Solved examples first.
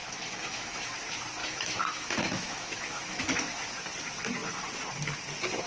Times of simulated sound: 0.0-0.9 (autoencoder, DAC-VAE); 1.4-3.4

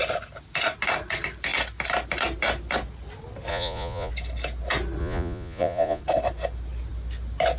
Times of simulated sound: 3.5-4.1 (vocoder, Vocos); 5.0-6.0